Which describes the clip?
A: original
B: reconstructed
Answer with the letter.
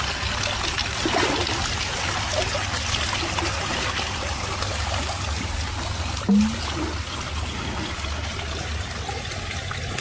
A